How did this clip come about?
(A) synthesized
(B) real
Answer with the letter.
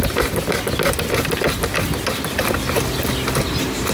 B